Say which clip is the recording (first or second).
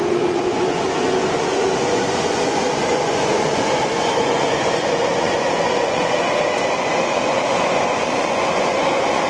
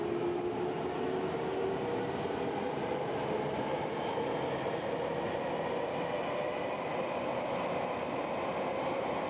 second